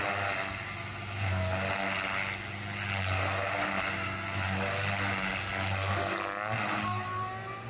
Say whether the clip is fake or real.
real